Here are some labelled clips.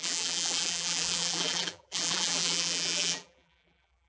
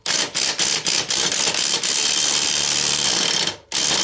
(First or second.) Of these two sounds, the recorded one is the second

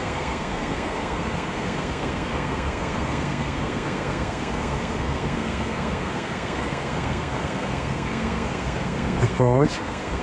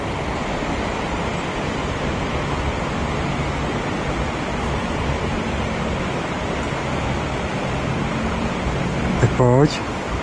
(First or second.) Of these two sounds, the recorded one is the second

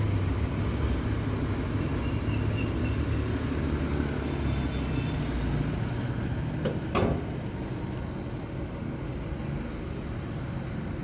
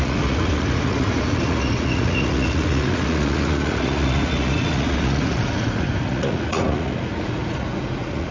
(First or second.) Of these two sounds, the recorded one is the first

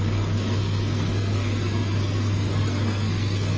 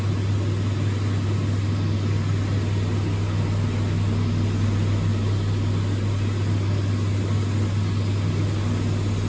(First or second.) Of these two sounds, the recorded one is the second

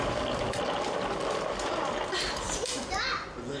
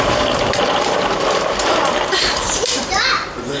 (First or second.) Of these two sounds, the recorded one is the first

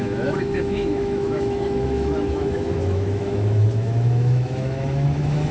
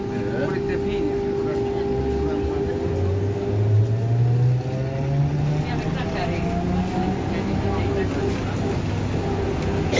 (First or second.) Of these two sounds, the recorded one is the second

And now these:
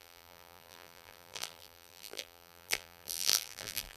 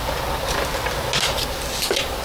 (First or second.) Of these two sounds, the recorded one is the second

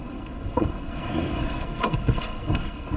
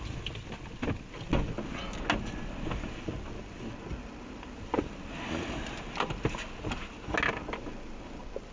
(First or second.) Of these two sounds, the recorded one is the second